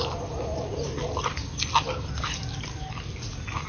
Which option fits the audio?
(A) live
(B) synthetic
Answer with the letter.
A